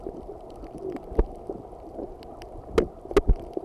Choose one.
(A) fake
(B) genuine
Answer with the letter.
B